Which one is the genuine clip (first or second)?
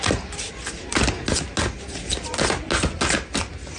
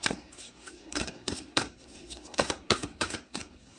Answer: first